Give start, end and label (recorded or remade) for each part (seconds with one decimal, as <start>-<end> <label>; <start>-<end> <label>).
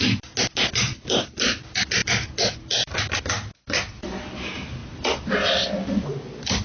0.0-0.7 recorded; 0.7-1.6 remade; 1.6-4.8 recorded; 4.8-5.3 remade; 5.3-6.6 recorded